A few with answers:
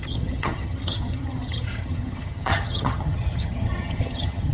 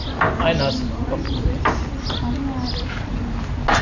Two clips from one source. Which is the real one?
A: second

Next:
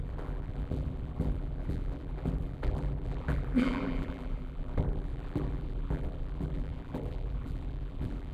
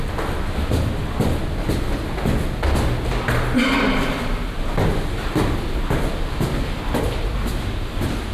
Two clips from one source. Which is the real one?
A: second